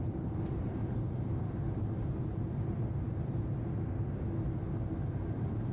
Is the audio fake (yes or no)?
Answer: no